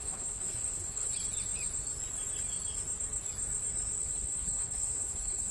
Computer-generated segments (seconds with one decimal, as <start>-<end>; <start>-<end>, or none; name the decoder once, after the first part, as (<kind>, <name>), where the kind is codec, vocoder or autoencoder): 0.0-1.1 (codec, HILCodec); 4.0-5.5